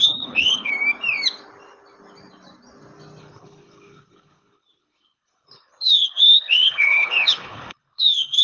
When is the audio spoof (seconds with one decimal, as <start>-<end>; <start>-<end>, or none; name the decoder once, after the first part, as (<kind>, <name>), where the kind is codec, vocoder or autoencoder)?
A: 0.0-0.7 (codec, HILCodec); 3.2-8.4

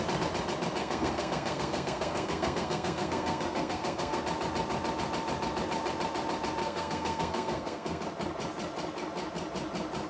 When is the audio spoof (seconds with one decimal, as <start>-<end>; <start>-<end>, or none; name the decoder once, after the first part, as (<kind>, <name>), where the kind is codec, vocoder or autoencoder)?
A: 0.8-4.2 (codec, SNAC); 6.6-8.0

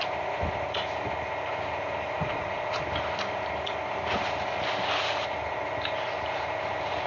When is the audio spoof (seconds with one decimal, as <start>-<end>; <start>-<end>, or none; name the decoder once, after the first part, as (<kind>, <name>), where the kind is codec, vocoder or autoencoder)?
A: 2.2-2.8 (vocoder, Vocos)

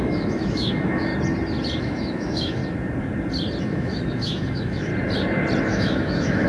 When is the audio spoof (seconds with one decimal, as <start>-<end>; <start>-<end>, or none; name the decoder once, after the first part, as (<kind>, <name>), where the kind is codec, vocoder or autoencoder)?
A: 0.0-1.1 (autoencoder, DAC-VAE); 1.8-2.6; 3.6-4.9; 5.6-6.5

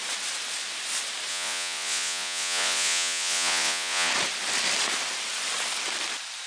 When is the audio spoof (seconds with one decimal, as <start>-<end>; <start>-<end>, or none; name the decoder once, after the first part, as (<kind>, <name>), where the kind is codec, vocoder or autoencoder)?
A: 1.3-4.1 (vocoder, Vocos)

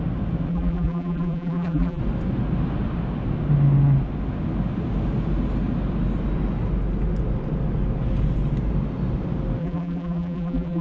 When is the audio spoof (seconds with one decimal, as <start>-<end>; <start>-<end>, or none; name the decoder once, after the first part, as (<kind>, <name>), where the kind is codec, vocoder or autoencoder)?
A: 0.5-2.0 (vocoder, BigVGAN v2); 9.6-10.8

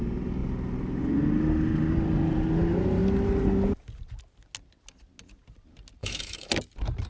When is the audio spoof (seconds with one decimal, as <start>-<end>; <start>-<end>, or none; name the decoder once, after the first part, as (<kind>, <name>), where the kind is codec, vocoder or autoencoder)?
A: 6.0-6.5 (autoencoder, DAC-VAE)